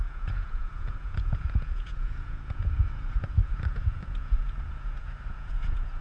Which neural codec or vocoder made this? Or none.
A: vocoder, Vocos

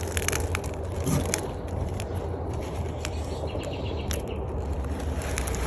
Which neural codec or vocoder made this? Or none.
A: none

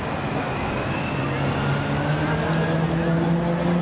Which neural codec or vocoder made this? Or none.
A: none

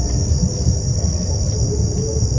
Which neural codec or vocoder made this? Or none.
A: none